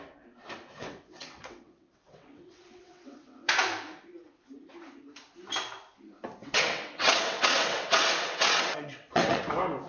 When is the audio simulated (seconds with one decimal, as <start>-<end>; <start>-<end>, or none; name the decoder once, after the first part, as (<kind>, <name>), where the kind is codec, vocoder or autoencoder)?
0.8-3.5 (vocoder, WaveNeXt); 6.4-9.4